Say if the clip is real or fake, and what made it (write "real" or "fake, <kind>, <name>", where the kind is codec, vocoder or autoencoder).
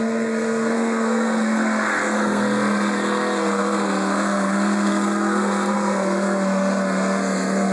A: fake, codec, SNAC